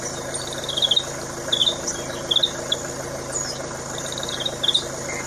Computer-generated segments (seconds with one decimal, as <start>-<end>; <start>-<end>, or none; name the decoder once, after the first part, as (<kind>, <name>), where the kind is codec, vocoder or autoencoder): none